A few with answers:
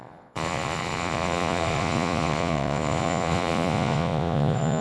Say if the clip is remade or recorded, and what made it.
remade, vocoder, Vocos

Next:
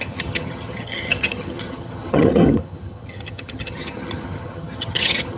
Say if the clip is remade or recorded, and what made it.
remade, vocoder, HiFi-GAN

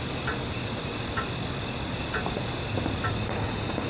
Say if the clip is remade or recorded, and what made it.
recorded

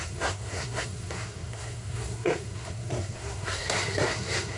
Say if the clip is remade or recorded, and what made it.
remade, codec, SNAC